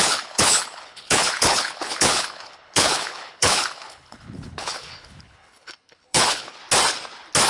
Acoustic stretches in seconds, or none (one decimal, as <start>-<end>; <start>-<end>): 6.6-7.5

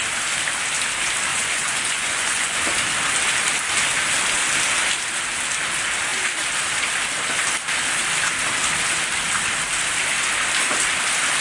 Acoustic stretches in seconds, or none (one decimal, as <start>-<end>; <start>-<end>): 0.0-1.3; 2.6-11.4